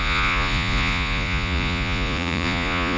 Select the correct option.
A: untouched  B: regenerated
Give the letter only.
B